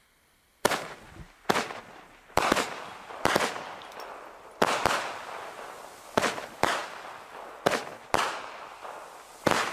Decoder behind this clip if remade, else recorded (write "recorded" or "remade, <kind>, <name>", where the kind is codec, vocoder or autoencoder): recorded